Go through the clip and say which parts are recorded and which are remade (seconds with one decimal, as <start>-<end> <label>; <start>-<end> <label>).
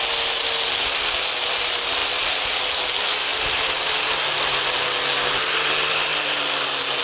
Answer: 0.0-7.0 recorded